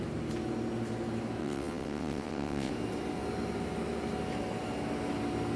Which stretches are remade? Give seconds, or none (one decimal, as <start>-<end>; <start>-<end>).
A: 1.4-2.7